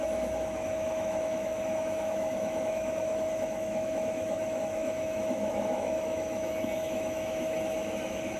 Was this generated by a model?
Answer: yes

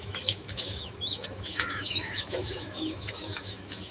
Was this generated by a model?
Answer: yes